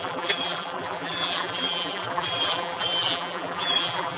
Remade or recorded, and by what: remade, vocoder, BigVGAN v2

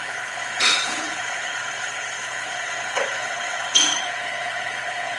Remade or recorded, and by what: remade, codec, HILCodec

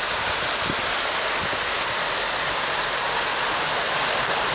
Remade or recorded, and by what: recorded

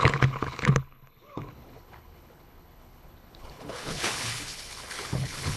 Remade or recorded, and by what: remade, codec, HILCodec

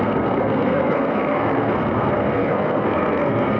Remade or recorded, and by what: remade, codec, SNAC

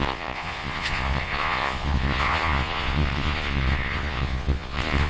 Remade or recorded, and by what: remade, vocoder, Vocos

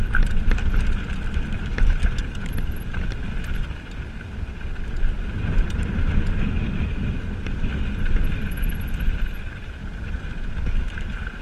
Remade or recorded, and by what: recorded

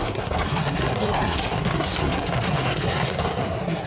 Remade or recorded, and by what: remade, codec, SNAC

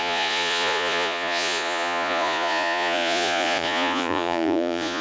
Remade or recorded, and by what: remade, vocoder, Vocos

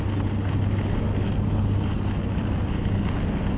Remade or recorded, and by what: recorded